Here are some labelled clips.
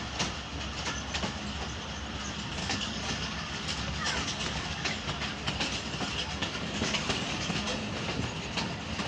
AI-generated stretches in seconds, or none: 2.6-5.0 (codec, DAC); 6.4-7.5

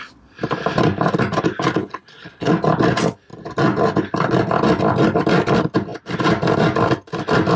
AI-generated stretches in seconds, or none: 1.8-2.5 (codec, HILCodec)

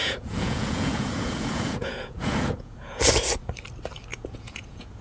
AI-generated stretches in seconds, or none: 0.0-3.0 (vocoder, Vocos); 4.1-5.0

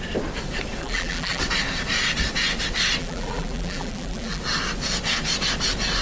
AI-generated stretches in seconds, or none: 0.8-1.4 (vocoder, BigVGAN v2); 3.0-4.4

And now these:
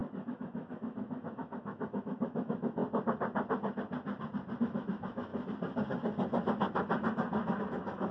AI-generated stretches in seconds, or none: 0.0-2.8 (autoencoder, DAC-VAE); 4.6-5.3; 7.6-8.1

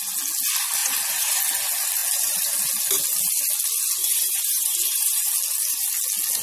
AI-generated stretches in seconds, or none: 0.8-1.4 (vocoder, BigVGAN v2); 4.0-5.3

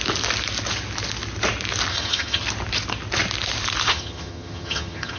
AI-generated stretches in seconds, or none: 1.9-2.4 (vocoder, HiFi-GAN); 3.9-5.2

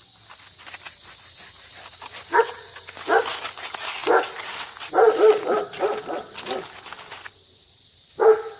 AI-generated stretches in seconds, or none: none